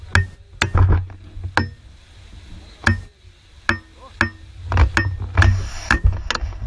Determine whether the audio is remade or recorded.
recorded